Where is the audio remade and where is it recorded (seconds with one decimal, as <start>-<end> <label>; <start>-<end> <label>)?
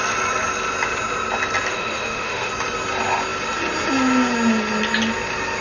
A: 0.0-1.7 recorded; 1.7-2.5 remade; 2.5-5.6 recorded